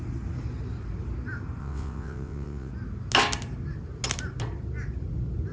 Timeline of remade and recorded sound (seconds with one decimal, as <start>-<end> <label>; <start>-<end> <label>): 0.0-1.6 recorded; 1.6-2.7 remade; 2.7-5.5 recorded